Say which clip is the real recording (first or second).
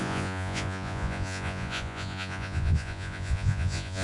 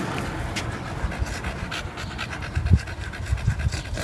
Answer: second